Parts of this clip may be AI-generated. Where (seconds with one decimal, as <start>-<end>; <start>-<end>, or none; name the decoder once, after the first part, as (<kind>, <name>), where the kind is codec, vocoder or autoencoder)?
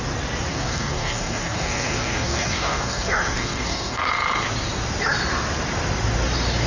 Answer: 0.5-4.1 (codec, SNAC)